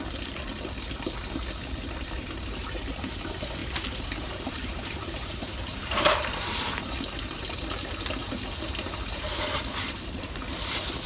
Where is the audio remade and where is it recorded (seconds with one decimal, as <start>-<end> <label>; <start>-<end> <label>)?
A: 0.0-2.2 recorded; 2.2-2.9 remade; 2.9-3.6 recorded; 3.6-6.5 remade; 6.5-11.1 recorded